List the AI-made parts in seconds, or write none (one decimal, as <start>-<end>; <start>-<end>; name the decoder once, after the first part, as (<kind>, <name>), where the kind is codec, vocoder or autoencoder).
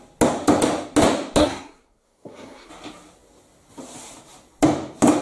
1.4-2.7 (codec, SNAC)